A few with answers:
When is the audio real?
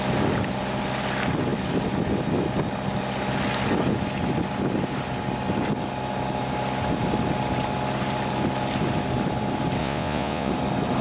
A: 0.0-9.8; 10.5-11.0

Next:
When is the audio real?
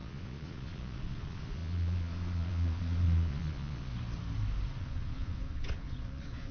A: 3.9-4.8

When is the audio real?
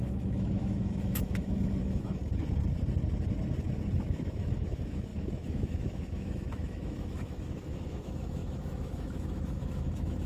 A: 2.2-4.0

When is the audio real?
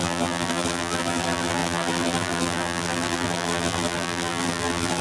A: none